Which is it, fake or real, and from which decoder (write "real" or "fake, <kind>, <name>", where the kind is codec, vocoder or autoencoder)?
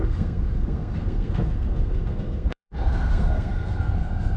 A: fake, codec, SNAC